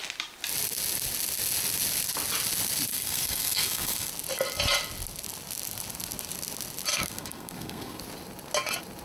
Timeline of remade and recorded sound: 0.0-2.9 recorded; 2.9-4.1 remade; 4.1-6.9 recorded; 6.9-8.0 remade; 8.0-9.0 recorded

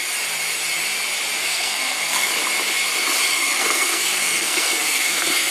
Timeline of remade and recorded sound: 0.0-1.5 recorded; 1.5-2.3 remade; 2.3-3.3 recorded; 3.3-5.5 remade

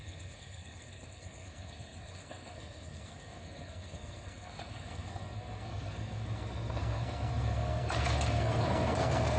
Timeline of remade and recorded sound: 0.0-9.4 remade